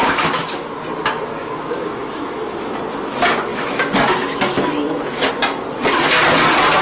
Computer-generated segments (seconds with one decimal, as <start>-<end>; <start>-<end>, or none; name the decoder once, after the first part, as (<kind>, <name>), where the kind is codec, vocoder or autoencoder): 0.0-0.7 (autoencoder, DAC-VAE); 1.4-2.7; 3.5-5.3